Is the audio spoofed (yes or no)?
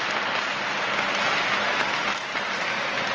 no